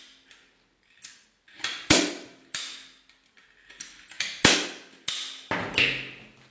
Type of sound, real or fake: real